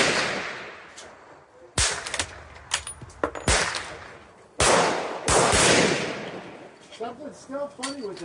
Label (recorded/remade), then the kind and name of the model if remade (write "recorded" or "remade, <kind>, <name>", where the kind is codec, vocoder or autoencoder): recorded